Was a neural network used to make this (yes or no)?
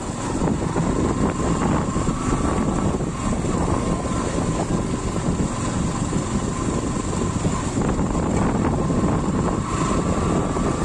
no